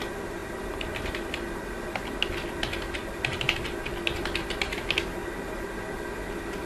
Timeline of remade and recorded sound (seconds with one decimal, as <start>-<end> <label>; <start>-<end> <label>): 0.0-6.7 recorded